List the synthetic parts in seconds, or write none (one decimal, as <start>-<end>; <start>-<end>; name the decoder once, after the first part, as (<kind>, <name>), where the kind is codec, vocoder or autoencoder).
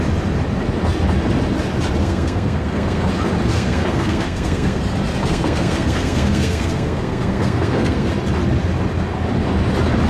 2.0-3.1 (codec, SNAC); 3.5-4.8; 5.2-8.1